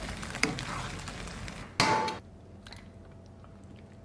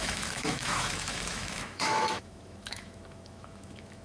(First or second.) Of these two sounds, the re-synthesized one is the second